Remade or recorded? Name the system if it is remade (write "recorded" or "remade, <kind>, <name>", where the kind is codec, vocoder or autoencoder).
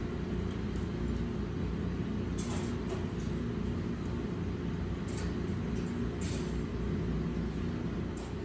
recorded